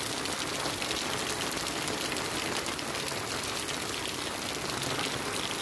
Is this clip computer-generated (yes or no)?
no